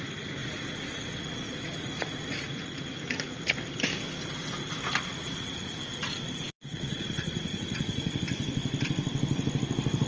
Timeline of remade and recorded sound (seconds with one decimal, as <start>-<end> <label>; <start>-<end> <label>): 0.0-0.4 recorded; 0.4-3.4 remade; 3.4-5.2 recorded; 5.2-8.2 remade; 8.2-10.1 recorded